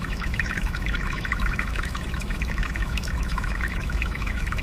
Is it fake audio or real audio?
fake